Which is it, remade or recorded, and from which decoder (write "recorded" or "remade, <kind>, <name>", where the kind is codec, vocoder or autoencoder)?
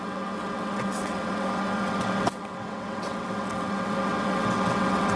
remade, vocoder, WaveNeXt